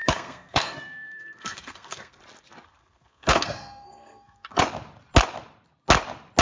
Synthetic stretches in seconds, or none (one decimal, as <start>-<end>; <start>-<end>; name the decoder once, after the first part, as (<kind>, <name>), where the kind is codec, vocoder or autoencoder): 0.0-2.2 (codec, SNAC); 2.8-4.6